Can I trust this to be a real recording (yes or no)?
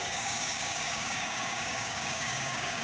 no